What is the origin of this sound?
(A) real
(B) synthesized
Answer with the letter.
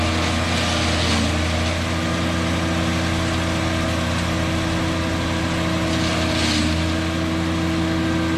A